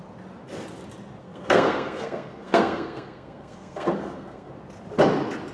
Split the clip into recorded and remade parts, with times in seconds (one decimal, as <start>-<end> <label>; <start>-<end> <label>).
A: 0.0-1.2 recorded; 1.2-4.5 remade; 4.5-5.5 recorded